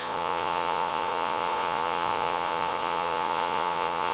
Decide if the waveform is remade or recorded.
remade